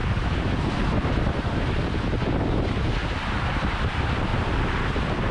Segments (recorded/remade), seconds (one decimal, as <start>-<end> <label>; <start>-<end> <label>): 0.0-0.7 remade; 0.7-3.0 recorded; 3.0-3.6 remade; 3.6-4.3 recorded; 4.3-5.3 remade

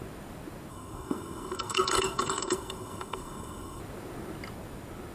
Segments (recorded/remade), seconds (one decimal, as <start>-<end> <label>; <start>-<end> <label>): 0.0-0.7 recorded; 0.7-3.8 remade; 3.8-5.1 recorded

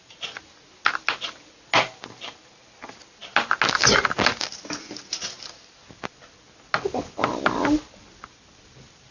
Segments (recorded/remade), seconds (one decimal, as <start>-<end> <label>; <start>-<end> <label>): 0.0-9.1 recorded

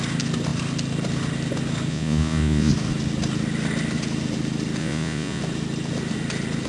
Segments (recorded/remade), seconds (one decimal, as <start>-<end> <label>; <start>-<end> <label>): 0.0-1.9 recorded; 1.9-2.7 remade; 2.7-4.8 recorded; 4.8-5.4 remade; 5.4-6.7 recorded

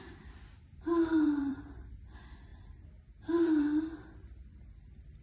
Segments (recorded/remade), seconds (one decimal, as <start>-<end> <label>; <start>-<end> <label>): 0.0-0.9 recorded; 0.9-1.8 remade; 1.8-2.5 recorded; 2.5-3.8 remade; 3.8-5.2 recorded